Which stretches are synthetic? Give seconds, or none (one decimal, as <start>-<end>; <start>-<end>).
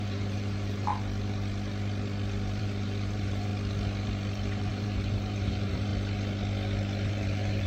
0.0-0.9; 2.6-3.5; 4.3-5.9; 7.1-7.7